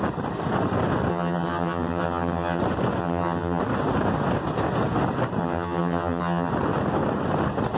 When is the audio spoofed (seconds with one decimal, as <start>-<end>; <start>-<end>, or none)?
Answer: 1.1-2.6; 3.0-3.6; 5.4-6.5